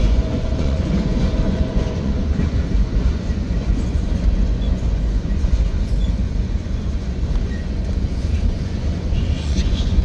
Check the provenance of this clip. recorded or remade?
remade